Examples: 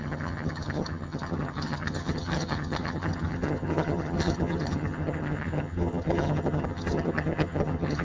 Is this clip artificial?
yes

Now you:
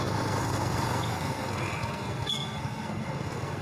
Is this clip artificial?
yes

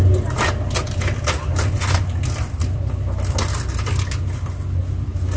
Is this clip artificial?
no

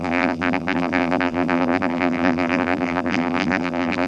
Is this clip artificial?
yes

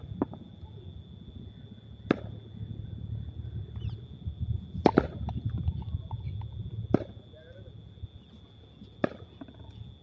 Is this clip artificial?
no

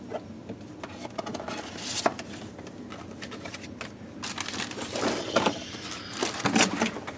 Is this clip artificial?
no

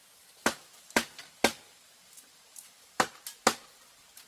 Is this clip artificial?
no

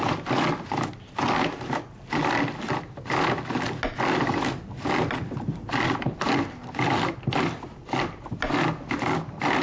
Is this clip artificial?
no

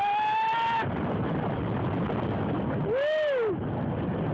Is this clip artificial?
no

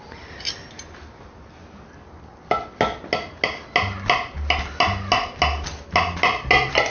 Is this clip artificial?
no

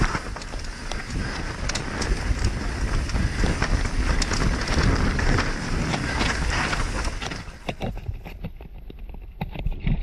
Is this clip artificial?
no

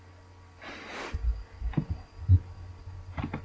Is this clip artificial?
no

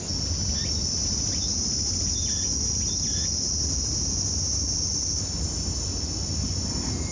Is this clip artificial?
no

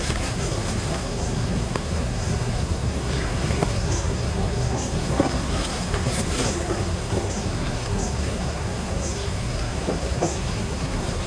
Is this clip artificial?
yes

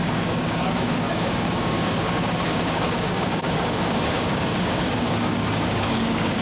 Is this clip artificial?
yes